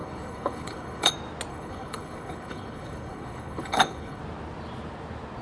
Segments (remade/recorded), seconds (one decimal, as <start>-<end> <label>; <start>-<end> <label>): 0.0-1.1 remade; 1.1-1.5 recorded; 1.5-4.2 remade; 4.2-5.4 recorded